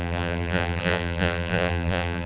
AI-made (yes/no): yes